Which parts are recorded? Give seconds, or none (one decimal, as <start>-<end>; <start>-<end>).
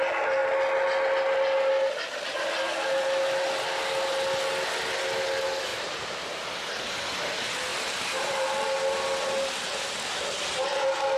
0.0-5.7; 6.2-7.7; 8.5-11.2